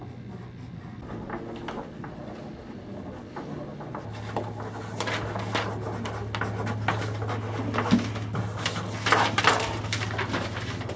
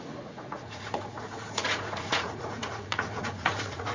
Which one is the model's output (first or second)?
second